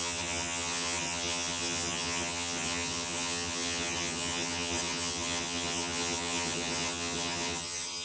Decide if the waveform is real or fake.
fake